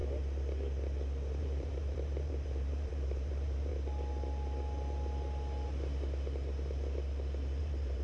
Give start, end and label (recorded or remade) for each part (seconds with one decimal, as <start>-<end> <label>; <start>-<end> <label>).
0.0-1.4 recorded; 1.4-3.7 remade; 3.7-7.6 recorded; 7.6-8.0 remade